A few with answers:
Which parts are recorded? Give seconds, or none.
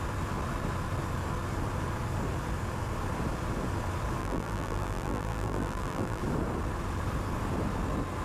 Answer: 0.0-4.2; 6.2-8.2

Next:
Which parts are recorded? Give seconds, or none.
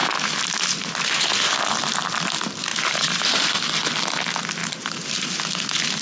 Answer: 0.0-2.7; 3.2-4.6; 5.3-6.0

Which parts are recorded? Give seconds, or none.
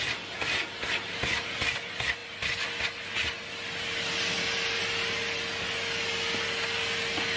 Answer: 0.0-7.4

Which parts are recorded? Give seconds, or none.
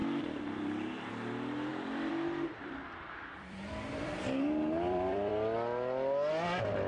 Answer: 1.1-1.7; 5.3-6.9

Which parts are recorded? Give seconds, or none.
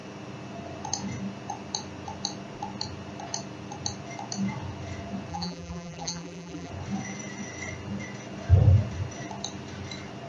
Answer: 0.0-5.3; 6.7-10.3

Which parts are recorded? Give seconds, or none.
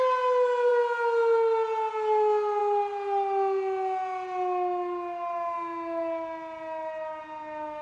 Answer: 0.0-7.8